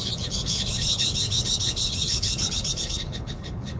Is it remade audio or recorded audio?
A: remade